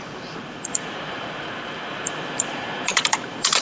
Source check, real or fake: fake